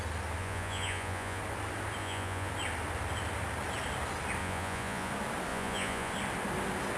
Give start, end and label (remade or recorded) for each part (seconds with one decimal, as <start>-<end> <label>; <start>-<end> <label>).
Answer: 0.0-0.4 recorded; 0.4-1.4 remade; 1.4-2.0 recorded; 2.0-2.5 remade; 2.5-4.4 recorded; 4.4-5.1 remade; 5.1-5.5 recorded; 5.5-6.1 remade; 6.1-7.0 recorded